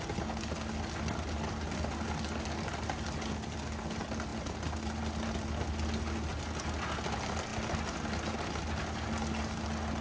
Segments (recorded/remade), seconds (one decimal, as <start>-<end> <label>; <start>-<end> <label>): 0.0-10.0 recorded